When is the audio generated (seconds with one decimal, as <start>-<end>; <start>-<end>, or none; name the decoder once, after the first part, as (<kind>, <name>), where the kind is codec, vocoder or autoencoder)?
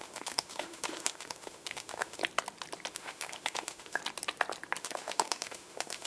0.0-2.2 (autoencoder, DAC-VAE); 2.9-4.0; 4.8-6.1